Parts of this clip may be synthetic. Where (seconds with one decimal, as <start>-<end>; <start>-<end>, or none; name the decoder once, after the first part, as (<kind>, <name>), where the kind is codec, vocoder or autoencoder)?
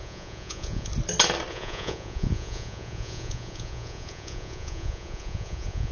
0.0-0.9 (vocoder, Vocos); 1.5-5.9